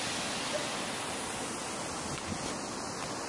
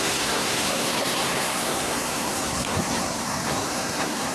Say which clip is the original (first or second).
first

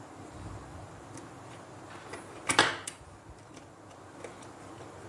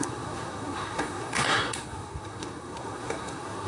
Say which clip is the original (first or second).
first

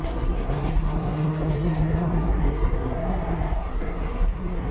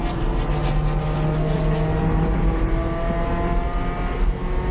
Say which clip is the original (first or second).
second